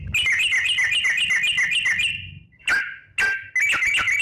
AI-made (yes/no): no